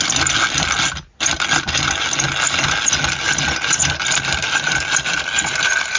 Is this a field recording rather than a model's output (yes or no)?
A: yes